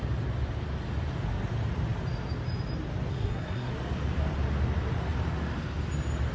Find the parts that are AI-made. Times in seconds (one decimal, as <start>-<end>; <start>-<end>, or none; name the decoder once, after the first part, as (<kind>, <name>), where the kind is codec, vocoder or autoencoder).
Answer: 3.1-3.7 (codec, SNAC)